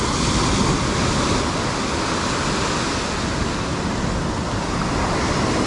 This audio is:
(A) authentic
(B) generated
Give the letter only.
A